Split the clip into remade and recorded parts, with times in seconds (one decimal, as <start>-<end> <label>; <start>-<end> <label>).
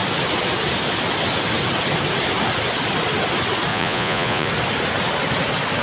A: 0.0-3.7 recorded; 3.7-4.5 remade; 4.5-5.8 recorded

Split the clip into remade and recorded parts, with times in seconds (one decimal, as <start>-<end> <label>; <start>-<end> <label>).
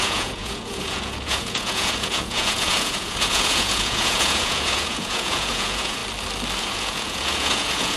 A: 0.0-6.0 remade; 6.0-6.6 recorded; 6.6-8.0 remade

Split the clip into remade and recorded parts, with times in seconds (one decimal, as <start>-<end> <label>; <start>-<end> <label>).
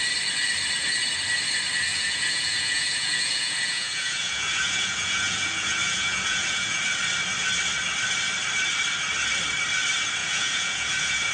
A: 0.0-1.9 recorded; 1.9-6.9 remade; 6.9-10.2 recorded; 10.2-11.3 remade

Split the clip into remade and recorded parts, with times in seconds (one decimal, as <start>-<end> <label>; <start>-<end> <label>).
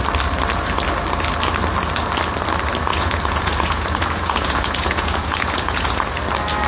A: 0.0-2.9 recorded; 2.9-6.0 remade; 6.0-6.7 recorded